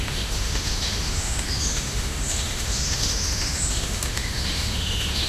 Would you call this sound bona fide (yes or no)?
no